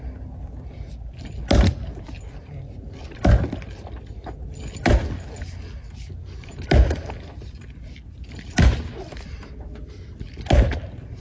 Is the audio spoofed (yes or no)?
no